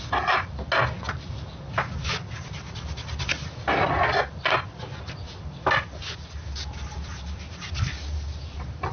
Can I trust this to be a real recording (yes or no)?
yes